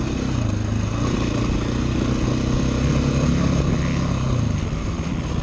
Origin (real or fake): real